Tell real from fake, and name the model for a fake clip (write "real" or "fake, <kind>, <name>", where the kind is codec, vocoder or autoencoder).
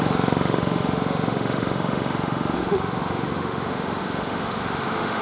fake, autoencoder, DAC-VAE